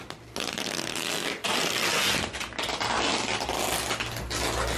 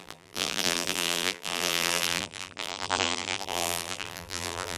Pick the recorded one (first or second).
first